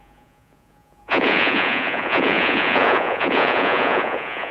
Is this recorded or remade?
remade